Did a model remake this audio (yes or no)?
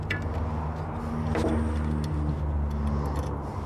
no